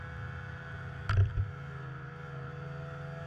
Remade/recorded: recorded